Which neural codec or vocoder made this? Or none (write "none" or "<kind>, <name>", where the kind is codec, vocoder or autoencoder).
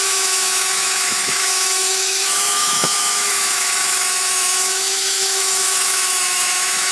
autoencoder, DAC-VAE